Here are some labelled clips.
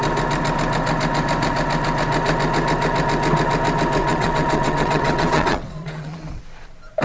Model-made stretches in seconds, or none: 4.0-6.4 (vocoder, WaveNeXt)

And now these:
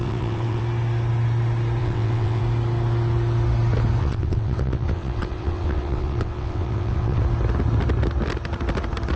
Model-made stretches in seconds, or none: 0.0-0.6 (vocoder, WaveNeXt); 1.8-2.4; 4.0-7.2

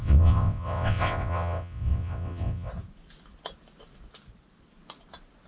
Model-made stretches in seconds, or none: 0.0-2.7 (vocoder, WaveNeXt)

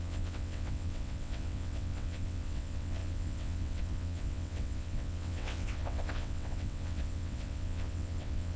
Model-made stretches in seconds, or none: 0.0-8.6 (vocoder, WaveNeXt)

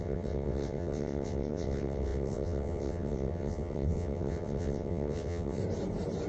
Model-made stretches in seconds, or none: 0.0-5.6 (vocoder, WaveNeXt)

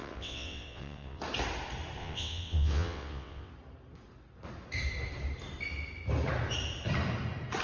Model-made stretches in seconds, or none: 0.0-1.2 (vocoder, WaveNeXt); 2.0-3.5